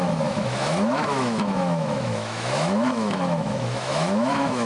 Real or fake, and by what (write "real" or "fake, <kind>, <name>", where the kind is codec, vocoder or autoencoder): fake, autoencoder, DAC-VAE